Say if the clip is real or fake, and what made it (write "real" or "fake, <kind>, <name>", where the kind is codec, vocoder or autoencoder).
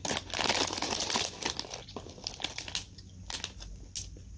real